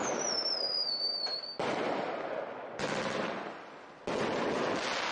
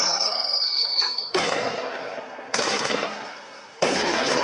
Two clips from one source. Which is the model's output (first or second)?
second